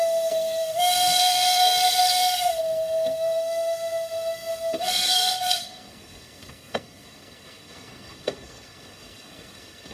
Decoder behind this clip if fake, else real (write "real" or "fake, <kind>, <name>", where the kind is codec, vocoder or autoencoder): fake, codec, SNAC